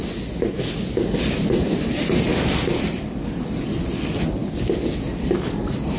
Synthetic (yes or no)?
no